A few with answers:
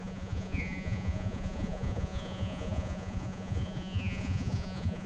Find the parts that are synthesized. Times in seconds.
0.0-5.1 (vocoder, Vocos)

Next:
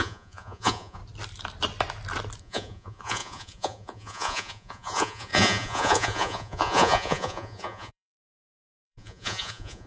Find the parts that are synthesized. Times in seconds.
0.0-1.0 (vocoder, Vocos); 2.4-9.9

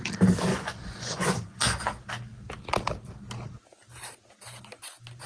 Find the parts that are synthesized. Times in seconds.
0.5-1.8 (vocoder, Vocos)